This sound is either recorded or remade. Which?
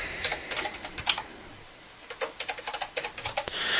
recorded